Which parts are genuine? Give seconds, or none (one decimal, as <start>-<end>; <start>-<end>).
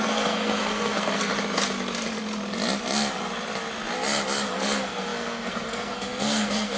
1.3-4.5